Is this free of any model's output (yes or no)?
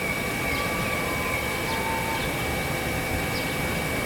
yes